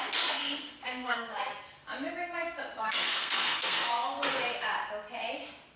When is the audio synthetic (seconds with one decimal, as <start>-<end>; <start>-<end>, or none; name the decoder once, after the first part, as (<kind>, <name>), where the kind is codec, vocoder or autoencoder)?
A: 0.0-1.5 (codec, SNAC); 2.8-4.4